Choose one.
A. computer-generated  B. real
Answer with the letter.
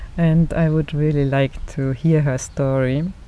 B